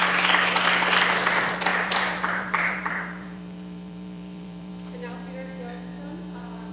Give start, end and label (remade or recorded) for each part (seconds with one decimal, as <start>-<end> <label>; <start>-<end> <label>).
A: 0.0-1.7 recorded; 1.7-4.7 remade; 4.7-6.7 recorded